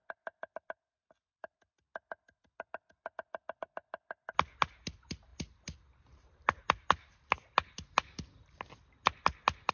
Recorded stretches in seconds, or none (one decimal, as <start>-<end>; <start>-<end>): 0.0-9.7